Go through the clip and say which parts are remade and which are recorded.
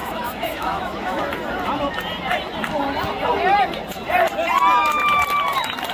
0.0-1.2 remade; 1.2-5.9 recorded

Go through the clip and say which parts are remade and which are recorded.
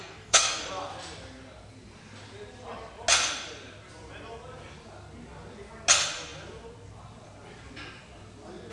0.0-0.6 remade; 0.6-8.7 recorded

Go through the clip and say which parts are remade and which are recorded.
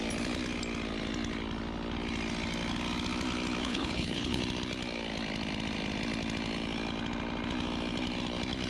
0.0-3.6 recorded; 3.6-4.4 remade; 4.4-8.7 recorded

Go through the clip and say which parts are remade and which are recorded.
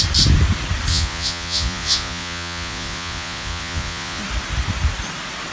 0.0-0.9 recorded; 0.9-4.2 remade; 4.2-5.5 recorded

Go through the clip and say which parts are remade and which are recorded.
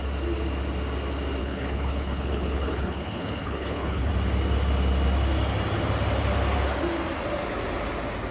0.0-1.4 recorded; 1.4-4.1 remade; 4.1-8.3 recorded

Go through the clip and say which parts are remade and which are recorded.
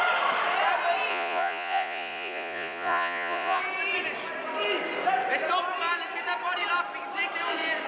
0.0-1.1 recorded; 1.1-3.6 remade; 3.6-7.9 recorded